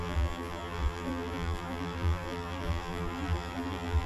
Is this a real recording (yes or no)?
no